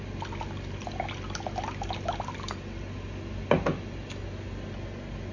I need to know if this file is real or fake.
real